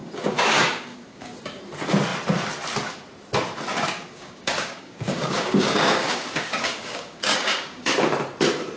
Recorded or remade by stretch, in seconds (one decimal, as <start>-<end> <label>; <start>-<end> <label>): 0.0-1.6 remade; 1.6-3.7 recorded; 3.7-7.9 remade; 7.9-8.8 recorded